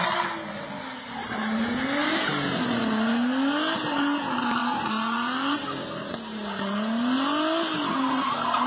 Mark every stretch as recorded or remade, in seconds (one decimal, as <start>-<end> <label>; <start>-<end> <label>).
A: 0.0-8.7 recorded